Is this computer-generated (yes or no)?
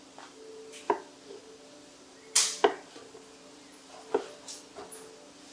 no